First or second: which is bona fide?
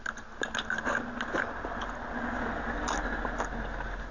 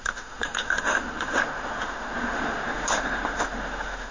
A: first